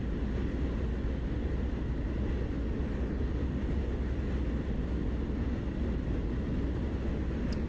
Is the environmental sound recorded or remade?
recorded